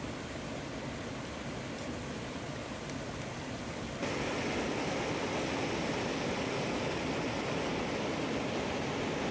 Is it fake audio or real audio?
real